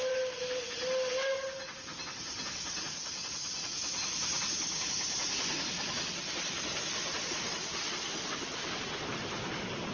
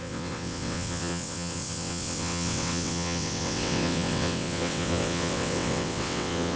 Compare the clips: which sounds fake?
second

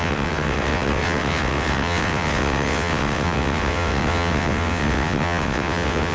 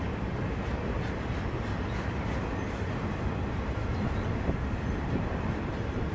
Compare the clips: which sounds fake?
first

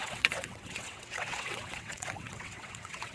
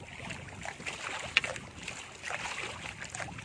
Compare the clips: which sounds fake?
first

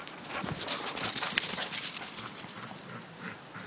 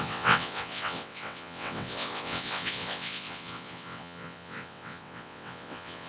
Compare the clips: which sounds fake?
second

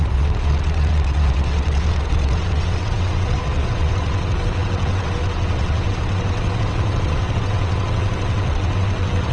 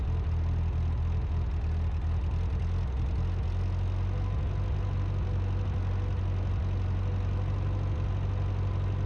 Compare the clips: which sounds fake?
first